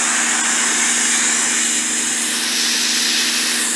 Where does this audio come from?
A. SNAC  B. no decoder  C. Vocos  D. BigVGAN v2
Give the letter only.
B